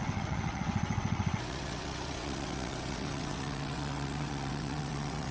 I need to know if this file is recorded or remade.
remade